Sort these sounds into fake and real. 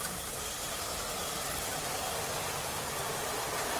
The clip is fake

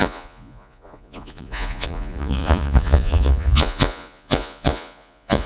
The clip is fake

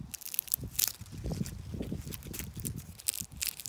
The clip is real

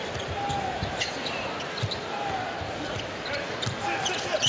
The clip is real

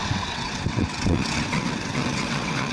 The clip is fake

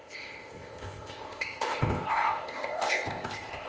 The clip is fake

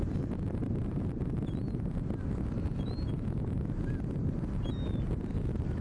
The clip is real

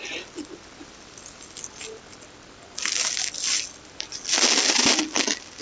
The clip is real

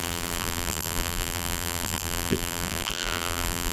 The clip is fake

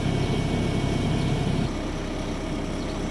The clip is real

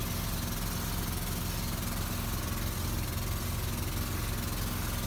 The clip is real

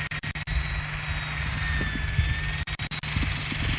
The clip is real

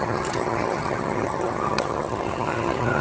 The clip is fake